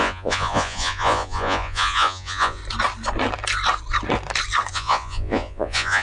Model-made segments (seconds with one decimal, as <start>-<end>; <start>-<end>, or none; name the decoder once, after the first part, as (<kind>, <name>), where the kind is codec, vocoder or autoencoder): 0.0-2.6 (vocoder, Vocos); 4.7-6.0